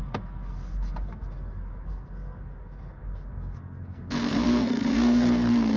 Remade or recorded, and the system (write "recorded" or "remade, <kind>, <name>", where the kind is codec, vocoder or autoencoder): remade, codec, SNAC